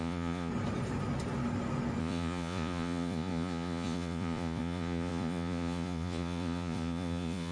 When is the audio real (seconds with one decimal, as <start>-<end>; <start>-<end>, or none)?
0.5-2.0